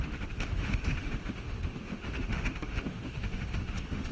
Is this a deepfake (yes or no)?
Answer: yes